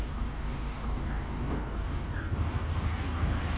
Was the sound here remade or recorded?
remade